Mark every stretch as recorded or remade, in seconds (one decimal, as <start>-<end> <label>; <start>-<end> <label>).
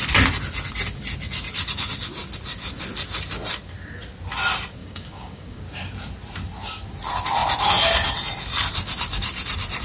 0.0-4.8 recorded; 4.8-5.6 remade; 5.6-9.8 recorded